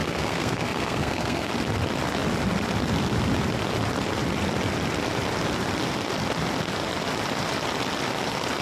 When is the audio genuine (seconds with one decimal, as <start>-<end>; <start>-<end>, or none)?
1.5-8.6